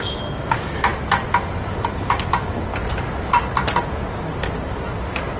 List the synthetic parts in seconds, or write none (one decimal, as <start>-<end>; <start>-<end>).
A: none